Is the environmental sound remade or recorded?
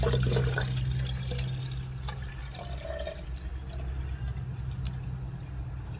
recorded